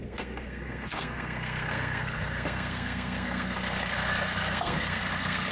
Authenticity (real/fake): fake